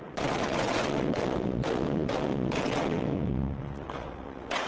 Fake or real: fake